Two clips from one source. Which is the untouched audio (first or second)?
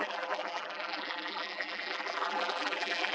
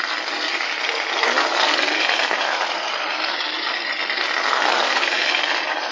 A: second